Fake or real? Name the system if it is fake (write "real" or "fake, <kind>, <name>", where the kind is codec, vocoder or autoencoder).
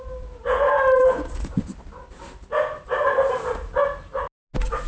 real